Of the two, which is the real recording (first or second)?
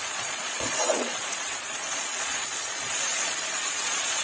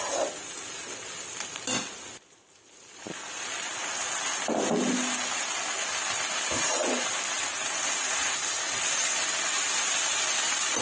second